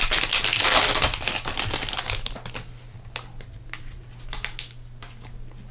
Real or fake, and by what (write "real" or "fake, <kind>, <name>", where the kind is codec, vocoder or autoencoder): real